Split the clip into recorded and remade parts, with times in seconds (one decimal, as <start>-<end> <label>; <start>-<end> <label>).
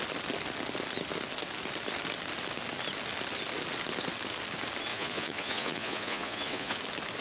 0.0-4.9 recorded; 4.9-6.8 remade; 6.8-7.2 recorded